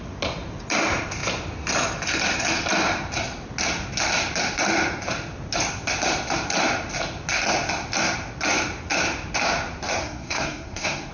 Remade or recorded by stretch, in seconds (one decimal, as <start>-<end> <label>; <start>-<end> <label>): 0.0-10.0 recorded; 10.0-11.1 remade